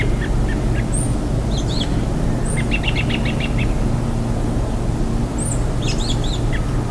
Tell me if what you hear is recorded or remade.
recorded